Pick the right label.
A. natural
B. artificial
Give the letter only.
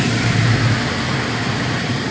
A